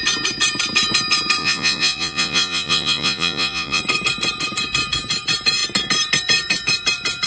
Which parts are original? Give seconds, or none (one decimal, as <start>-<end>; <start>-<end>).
0.0-1.4; 3.8-7.3